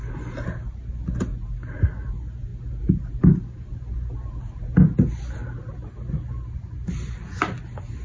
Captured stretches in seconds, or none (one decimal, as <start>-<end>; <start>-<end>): 0.0-8.0